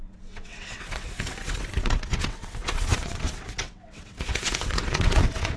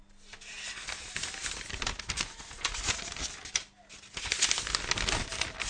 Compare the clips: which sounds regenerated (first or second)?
first